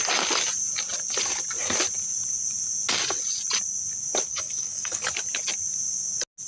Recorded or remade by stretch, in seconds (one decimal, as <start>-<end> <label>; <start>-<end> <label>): 0.0-4.3 recorded; 4.3-5.1 remade; 5.1-6.5 recorded